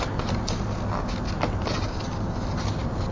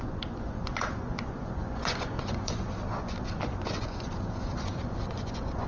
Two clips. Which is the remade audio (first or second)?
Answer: second